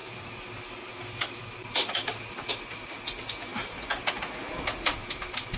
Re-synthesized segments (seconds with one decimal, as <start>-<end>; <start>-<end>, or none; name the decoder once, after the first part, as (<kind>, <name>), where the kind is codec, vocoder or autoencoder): 0.0-2.5 (vocoder, BigVGAN v2); 5.0-5.6